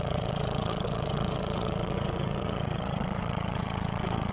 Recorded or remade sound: remade